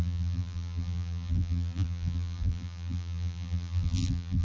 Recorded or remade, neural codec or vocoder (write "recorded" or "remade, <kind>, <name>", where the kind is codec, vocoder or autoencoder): remade, vocoder, BigVGAN v2